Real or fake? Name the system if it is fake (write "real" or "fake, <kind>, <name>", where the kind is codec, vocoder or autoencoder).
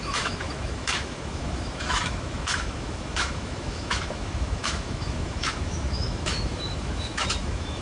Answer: fake, autoencoder, DAC-VAE